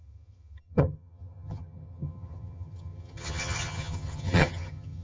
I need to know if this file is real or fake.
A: fake